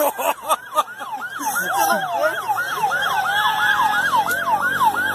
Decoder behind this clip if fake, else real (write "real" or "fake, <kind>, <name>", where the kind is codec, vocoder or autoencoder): real